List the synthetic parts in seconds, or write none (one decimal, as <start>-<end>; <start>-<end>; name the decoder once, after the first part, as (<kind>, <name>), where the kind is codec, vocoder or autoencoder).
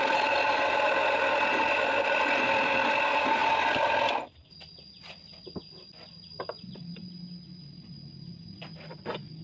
none